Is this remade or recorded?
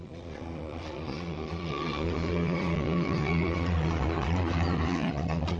remade